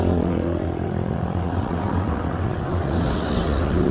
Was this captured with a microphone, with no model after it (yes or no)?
no